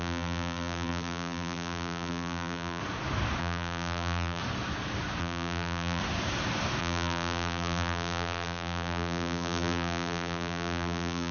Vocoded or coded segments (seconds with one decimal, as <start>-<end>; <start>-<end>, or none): 0.0-2.8; 3.4-4.4; 5.2-6.0; 6.8-11.3